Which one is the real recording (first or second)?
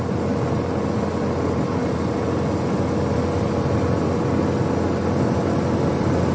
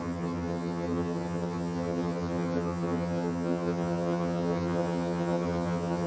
first